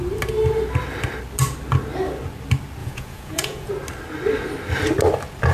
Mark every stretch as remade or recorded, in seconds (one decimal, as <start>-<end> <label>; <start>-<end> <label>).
0.0-2.8 recorded; 2.8-3.7 remade; 3.7-5.5 recorded